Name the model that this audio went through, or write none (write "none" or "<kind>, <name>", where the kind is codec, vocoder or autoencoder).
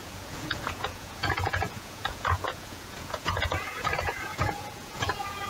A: vocoder, Vocos